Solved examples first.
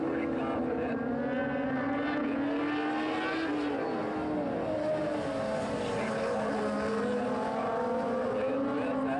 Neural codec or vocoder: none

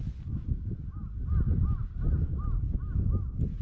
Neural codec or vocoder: none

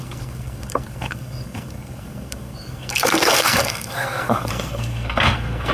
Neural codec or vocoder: codec, SNAC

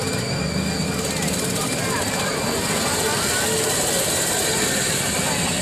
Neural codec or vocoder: none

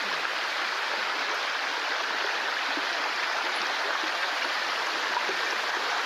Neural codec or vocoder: none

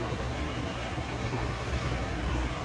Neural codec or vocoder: codec, SNAC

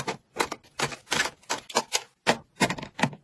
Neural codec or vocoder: none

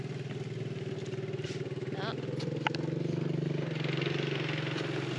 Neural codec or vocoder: none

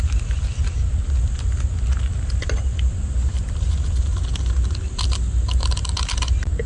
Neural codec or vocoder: none